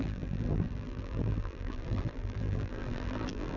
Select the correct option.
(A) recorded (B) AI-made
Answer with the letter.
B